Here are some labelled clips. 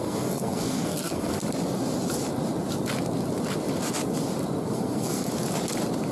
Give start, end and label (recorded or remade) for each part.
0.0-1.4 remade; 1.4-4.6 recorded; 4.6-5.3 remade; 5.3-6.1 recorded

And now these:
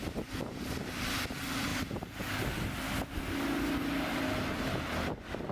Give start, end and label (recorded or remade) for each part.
0.0-5.5 recorded

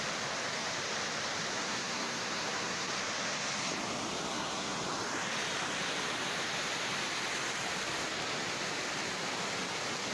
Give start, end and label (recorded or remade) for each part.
0.0-1.5 recorded; 1.5-2.9 remade; 2.9-4.3 recorded; 4.3-4.8 remade; 4.8-10.1 recorded

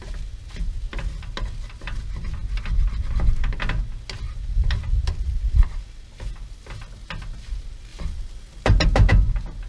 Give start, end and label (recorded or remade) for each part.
0.0-9.7 recorded

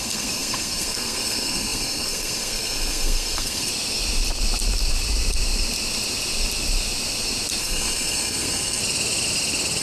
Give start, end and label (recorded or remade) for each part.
0.0-3.7 remade; 3.7-7.6 recorded; 7.6-8.8 remade; 8.8-9.8 recorded

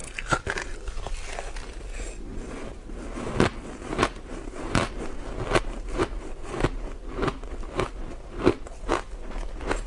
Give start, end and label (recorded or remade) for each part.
0.0-9.9 recorded

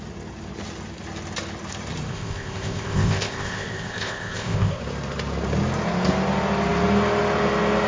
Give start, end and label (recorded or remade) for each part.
0.0-2.1 recorded; 2.1-4.8 remade; 4.8-7.9 recorded